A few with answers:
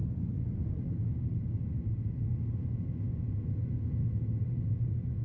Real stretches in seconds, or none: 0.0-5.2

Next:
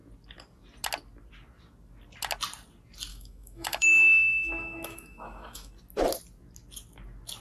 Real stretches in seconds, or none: 0.0-3.1; 5.7-7.4

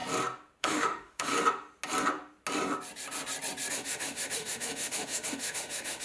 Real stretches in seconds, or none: 0.0-0.6; 1.3-3.7

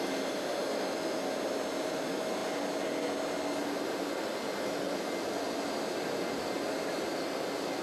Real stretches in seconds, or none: 0.0-7.8

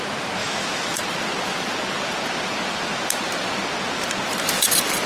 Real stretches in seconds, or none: 0.0-0.4; 1.0-5.1

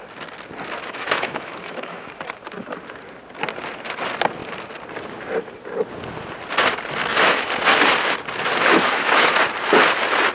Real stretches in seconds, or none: 0.0-0.8; 2.1-7.0; 7.5-8.7; 9.3-10.3